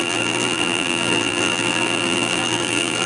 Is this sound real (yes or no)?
no